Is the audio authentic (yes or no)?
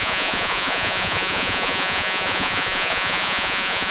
no